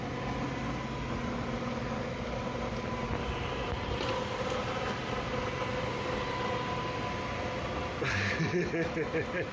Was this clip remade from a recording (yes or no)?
no